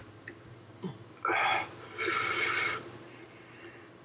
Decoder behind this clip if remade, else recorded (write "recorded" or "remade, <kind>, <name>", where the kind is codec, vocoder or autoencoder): recorded